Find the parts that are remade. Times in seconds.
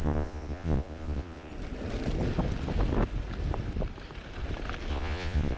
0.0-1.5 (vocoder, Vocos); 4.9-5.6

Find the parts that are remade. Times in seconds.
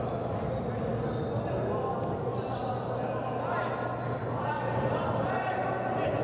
none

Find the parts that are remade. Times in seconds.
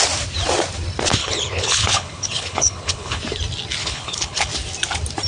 1.2-3.2 (codec, HILCodec); 3.8-4.5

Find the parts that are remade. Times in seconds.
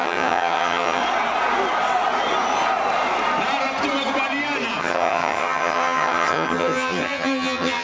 0.0-1.0 (vocoder, HiFi-GAN); 4.8-7.8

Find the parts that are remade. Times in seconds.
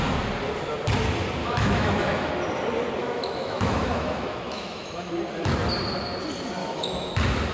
1.4-2.3 (autoencoder, DAC-VAE); 3.0-5.1; 6.6-7.1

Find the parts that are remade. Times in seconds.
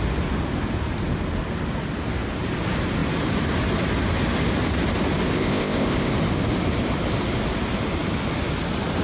5.4-6.1 (codec, ZipCodec)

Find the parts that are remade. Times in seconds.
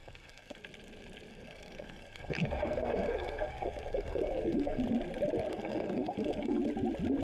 0.0-0.6 (codec, SNAC); 1.3-4.8; 5.5-6.6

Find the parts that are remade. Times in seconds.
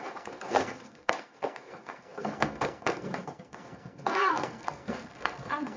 0.0-5.8 (codec, SNAC)